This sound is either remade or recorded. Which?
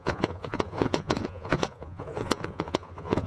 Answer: remade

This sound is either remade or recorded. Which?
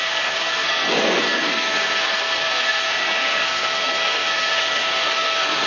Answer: remade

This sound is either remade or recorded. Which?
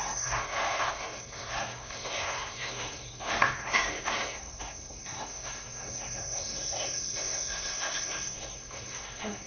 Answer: remade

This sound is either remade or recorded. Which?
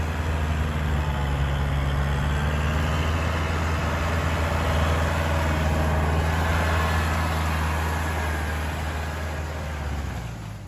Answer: recorded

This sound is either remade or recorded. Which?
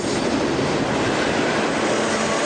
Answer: recorded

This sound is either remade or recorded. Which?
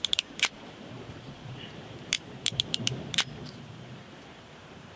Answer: remade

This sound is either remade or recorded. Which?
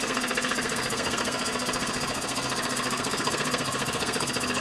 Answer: remade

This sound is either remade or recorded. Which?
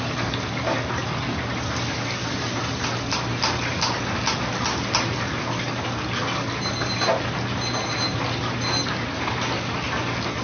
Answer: recorded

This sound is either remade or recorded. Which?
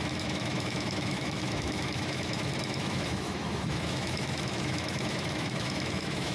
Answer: remade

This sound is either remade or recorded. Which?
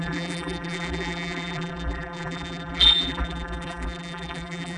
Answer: remade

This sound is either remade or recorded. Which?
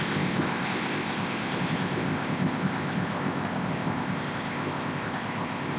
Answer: remade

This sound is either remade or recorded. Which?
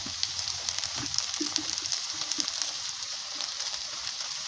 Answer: remade